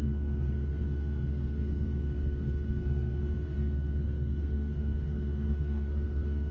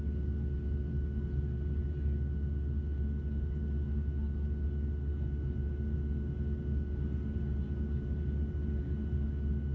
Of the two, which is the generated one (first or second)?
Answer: first